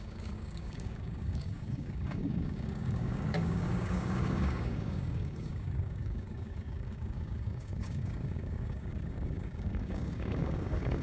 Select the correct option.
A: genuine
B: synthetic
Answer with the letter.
B